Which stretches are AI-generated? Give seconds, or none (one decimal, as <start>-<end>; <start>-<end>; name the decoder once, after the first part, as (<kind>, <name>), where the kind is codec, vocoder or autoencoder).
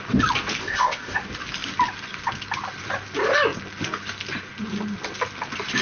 0.6-1.2 (codec, ZipCodec)